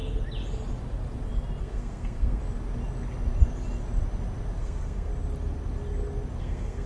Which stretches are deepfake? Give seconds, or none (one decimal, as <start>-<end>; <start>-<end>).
1.6-2.4; 4.6-5.1; 6.4-6.9